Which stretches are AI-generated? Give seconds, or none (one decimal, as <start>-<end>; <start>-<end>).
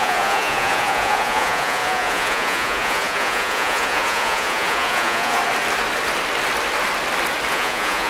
0.0-5.4; 7.5-8.1